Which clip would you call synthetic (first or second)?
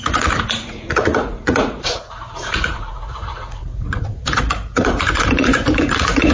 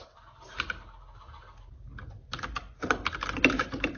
first